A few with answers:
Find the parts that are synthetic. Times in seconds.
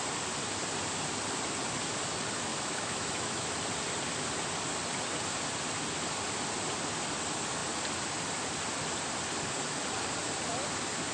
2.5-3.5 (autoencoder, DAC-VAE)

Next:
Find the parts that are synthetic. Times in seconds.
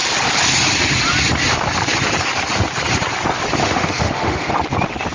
3.6-4.5 (autoencoder, DAC-VAE)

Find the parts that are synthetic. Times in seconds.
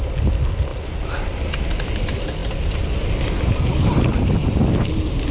none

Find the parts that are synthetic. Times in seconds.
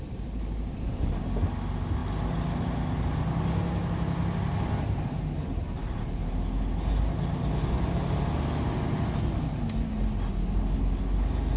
none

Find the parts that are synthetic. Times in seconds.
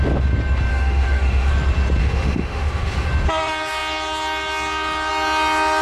0.7-1.5 (autoencoder, DAC-VAE); 2.0-3.1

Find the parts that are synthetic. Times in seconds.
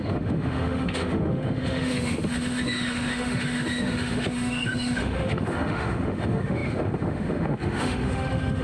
0.0-8.6 (autoencoder, DAC-VAE)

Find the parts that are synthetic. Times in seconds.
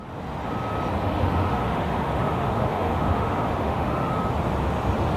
1.0-4.1 (autoencoder, DAC-VAE)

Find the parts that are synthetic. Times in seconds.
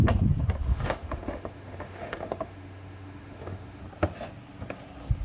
0.7-3.8 (autoencoder, DAC-VAE)